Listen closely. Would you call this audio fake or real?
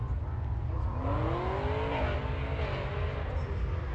real